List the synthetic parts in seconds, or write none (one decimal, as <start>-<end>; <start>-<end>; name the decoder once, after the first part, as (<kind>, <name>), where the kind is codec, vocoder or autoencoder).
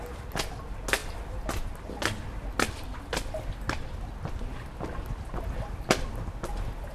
none